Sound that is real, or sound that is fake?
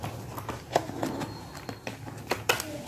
real